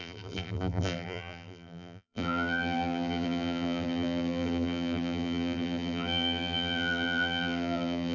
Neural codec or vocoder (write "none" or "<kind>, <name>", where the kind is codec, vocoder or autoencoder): vocoder, BigVGAN v2